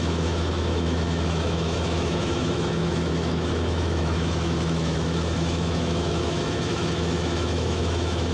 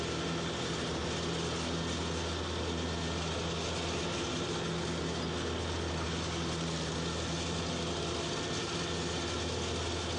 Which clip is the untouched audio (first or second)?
second